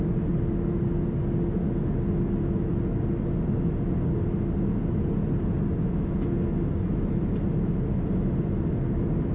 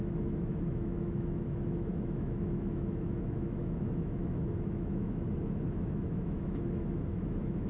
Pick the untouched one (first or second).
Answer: first